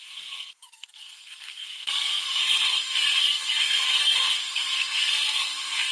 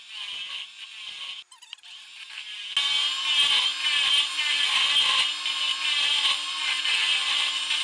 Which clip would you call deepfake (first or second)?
first